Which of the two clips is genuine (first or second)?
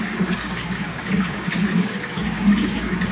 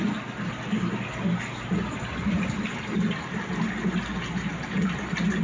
second